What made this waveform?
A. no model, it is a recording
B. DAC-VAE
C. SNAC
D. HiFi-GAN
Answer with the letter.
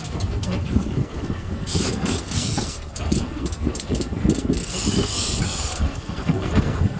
C